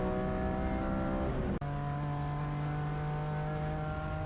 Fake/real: real